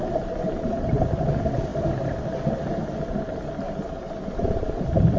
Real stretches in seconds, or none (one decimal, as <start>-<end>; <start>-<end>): 0.0-5.2